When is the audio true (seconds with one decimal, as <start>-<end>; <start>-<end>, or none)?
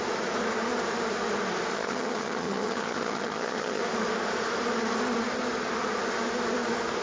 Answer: 0.0-1.7; 3.8-7.0